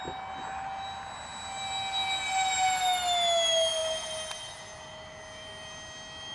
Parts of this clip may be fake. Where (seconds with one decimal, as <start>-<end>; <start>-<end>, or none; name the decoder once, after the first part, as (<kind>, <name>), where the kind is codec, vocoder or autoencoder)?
none

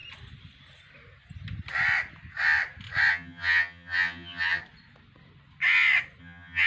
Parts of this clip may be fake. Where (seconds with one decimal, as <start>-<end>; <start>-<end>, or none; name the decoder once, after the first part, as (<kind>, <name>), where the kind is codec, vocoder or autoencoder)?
3.1-4.6 (vocoder, HiFi-GAN); 6.2-6.7

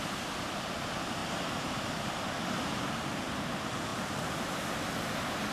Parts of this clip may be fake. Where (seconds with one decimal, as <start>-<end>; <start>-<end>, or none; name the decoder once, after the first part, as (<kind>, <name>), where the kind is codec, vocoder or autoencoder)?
none